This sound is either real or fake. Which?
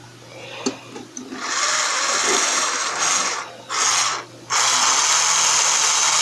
real